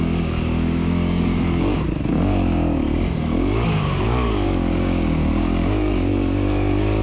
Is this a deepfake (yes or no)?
yes